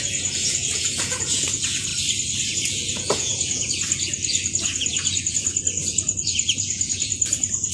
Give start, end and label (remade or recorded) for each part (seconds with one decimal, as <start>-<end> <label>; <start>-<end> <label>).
0.0-1.9 remade; 1.9-2.5 recorded; 2.5-7.7 remade